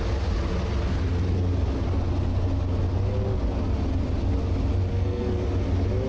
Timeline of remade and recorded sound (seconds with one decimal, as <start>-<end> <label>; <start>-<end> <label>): 0.0-4.9 recorded; 4.9-5.4 remade; 5.4-6.1 recorded